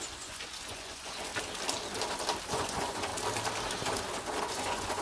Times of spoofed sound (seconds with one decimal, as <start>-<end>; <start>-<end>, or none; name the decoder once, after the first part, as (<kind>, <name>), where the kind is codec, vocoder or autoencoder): 0.0-1.3 (vocoder, Vocos); 2.5-3.1; 4.4-5.0